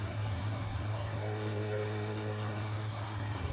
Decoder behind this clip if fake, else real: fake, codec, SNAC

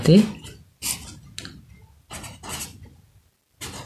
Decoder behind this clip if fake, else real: real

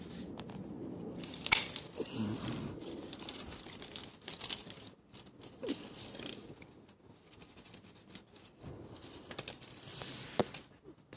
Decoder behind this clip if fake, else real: real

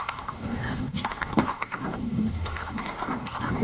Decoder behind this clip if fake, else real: fake, codec, SNAC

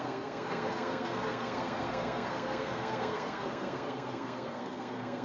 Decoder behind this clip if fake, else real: fake, codec, SNAC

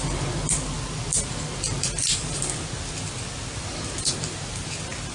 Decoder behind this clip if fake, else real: real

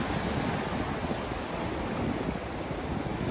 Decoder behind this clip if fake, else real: real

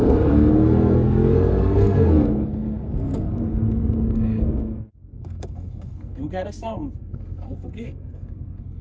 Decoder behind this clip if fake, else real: fake, codec, SNAC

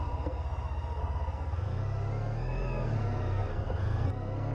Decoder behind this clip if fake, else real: fake, codec, SNAC